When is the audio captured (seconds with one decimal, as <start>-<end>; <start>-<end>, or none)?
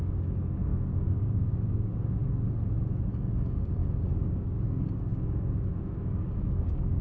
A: 2.2-3.1; 3.8-4.3